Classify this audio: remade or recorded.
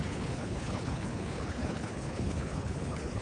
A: remade